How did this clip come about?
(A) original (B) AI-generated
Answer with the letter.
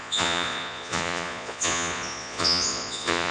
B